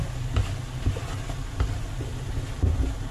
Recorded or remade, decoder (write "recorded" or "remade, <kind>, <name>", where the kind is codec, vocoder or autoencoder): recorded